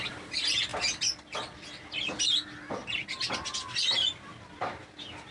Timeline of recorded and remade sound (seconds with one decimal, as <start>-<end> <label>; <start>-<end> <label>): 0.0-5.3 recorded